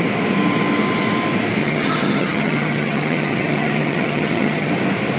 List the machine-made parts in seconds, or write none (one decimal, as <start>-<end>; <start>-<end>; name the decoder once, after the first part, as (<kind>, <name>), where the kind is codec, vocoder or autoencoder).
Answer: 1.6-4.7 (vocoder, HiFi-GAN)